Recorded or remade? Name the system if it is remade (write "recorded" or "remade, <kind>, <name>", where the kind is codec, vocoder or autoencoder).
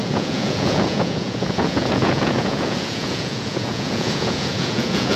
remade, vocoder, Vocos